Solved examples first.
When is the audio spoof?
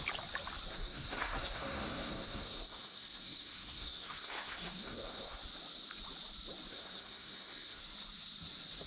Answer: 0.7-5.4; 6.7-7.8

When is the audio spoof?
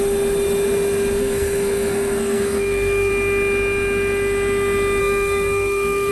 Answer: 1.2-3.1; 5.0-6.1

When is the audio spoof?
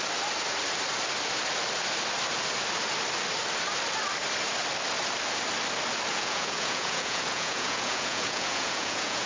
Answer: 6.1-9.3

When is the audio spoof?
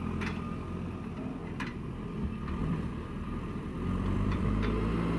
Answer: 1.4-4.5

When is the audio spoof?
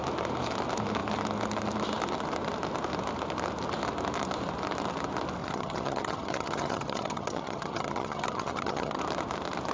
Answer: 5.4-9.0